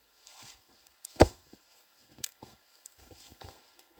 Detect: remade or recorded remade